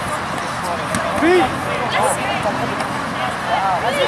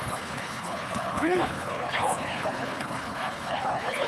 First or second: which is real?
first